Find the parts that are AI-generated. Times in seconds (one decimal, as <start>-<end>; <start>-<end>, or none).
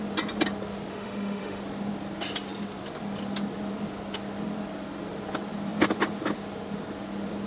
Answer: 0.9-1.6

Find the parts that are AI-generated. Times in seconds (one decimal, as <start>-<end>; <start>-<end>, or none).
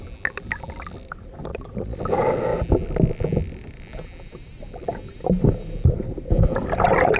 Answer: 1.5-2.0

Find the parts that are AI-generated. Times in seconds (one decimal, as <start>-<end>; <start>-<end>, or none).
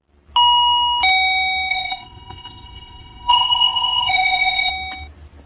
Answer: 1.7-4.7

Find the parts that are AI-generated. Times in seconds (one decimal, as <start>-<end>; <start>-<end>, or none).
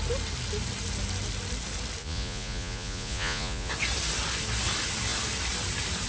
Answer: 2.0-3.7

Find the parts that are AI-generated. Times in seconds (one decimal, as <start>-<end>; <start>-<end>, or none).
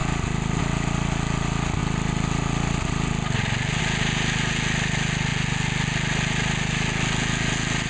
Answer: none